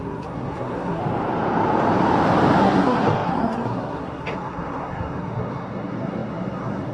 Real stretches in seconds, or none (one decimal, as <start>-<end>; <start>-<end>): 1.0-2.6